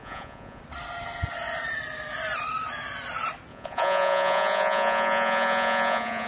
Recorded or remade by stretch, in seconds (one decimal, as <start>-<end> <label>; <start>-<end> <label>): 0.0-0.6 remade; 0.6-3.5 recorded; 3.5-6.3 remade